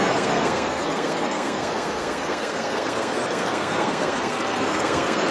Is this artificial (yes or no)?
yes